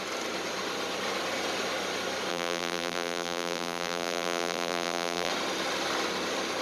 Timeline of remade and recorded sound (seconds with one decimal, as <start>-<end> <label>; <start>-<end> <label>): 0.0-2.3 recorded; 2.3-5.3 remade; 5.3-6.6 recorded